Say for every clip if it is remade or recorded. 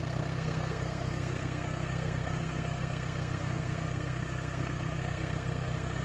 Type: remade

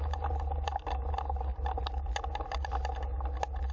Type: recorded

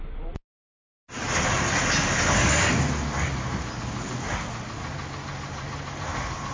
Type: recorded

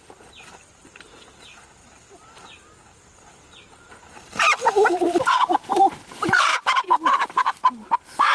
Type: remade